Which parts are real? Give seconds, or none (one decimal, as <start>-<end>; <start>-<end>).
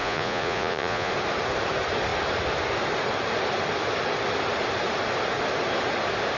1.1-6.4